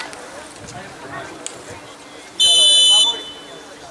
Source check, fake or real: real